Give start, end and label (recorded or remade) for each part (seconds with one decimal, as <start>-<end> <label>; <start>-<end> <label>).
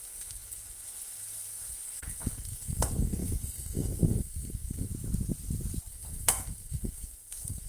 0.0-4.9 remade; 4.9-5.9 recorded; 5.9-7.7 remade